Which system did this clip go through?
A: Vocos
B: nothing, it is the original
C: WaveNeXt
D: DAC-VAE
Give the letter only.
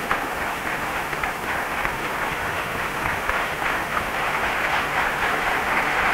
D